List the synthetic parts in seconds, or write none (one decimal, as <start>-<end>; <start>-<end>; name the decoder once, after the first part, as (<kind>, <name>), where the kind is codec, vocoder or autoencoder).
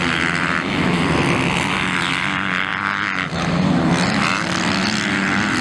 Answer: none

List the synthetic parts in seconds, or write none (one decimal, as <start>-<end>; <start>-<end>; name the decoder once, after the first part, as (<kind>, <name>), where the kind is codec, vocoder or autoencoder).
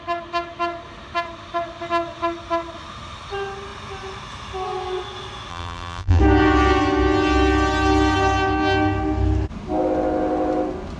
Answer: 5.5-6.2 (vocoder, BigVGAN v2)